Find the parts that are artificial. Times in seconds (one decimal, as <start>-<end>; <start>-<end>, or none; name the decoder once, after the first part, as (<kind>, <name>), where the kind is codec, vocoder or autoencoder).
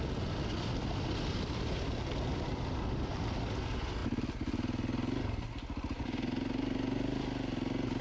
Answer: none